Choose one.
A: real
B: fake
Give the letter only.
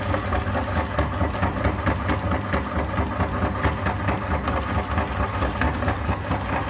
A